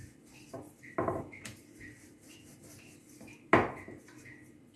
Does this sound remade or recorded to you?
recorded